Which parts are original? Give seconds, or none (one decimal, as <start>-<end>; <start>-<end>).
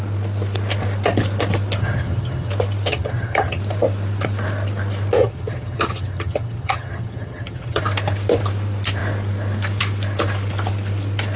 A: 0.0-1.8; 2.5-2.9; 3.6-5.2; 7.8-11.4